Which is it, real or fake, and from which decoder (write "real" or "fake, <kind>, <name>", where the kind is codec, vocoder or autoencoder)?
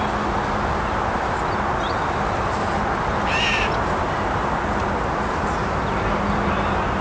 real